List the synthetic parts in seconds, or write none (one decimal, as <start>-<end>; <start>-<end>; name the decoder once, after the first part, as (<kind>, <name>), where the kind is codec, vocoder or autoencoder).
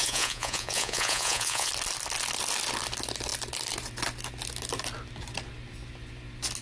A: 0.0-1.7 (vocoder, Vocos)